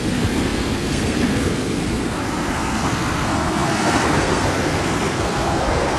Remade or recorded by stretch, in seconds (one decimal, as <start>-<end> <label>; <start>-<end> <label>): 0.0-6.0 remade